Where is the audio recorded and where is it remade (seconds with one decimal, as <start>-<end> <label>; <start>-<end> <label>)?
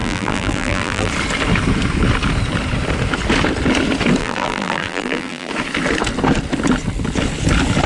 0.0-1.1 remade; 1.1-4.2 recorded; 4.2-5.5 remade; 5.5-7.9 recorded